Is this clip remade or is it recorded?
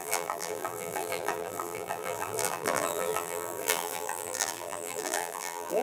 remade